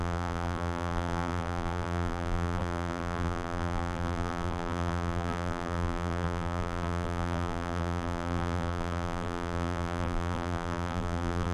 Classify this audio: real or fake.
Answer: fake